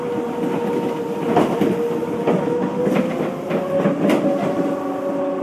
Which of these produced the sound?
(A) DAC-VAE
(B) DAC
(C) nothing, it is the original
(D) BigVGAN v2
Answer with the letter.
C